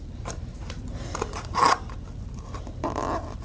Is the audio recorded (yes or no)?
yes